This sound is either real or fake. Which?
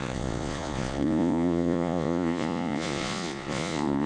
fake